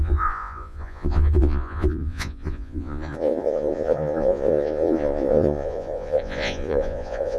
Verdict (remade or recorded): remade